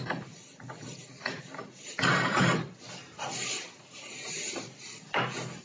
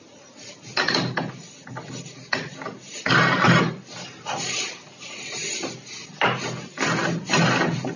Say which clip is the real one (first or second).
second